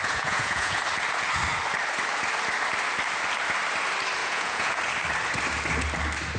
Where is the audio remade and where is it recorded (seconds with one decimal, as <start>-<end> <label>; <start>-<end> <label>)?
0.0-0.8 remade; 0.8-4.2 recorded; 4.2-4.8 remade; 4.8-6.4 recorded